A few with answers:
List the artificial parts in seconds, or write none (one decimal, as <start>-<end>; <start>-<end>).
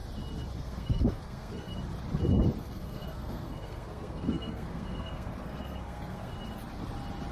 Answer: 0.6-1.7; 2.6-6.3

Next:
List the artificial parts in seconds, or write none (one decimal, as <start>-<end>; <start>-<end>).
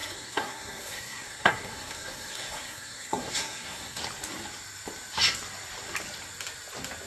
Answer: 0.0-4.0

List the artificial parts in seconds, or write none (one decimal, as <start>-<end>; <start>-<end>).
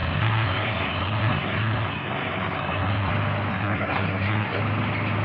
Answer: 0.0-3.1; 3.5-4.6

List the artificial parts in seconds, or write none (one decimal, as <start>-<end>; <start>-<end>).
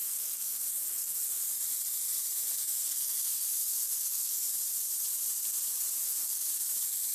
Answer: 0.0-1.4; 2.6-4.5; 6.0-6.5